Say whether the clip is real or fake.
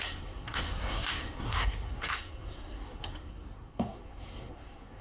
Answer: fake